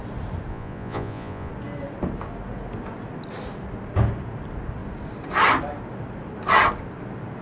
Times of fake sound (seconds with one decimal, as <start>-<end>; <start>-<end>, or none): 0.5-1.5